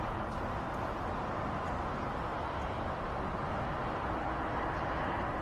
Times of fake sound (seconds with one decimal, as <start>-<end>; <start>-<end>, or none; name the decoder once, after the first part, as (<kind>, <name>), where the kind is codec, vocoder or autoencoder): none